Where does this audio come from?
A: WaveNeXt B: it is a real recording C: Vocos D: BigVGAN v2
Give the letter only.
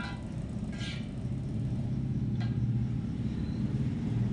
D